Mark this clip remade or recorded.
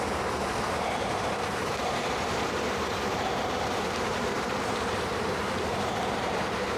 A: remade